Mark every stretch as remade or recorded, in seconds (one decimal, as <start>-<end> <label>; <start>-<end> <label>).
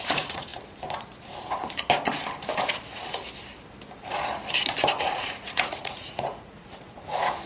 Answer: 0.0-0.5 remade; 0.5-5.0 recorded; 5.0-7.5 remade